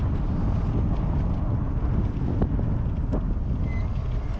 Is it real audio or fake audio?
real